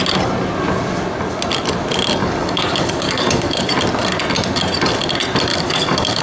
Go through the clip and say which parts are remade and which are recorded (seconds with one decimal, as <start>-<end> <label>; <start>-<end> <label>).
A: 0.0-2.2 recorded; 2.2-3.7 remade; 3.7-5.5 recorded; 5.5-6.2 remade